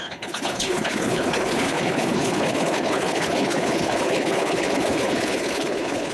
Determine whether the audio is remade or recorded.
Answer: remade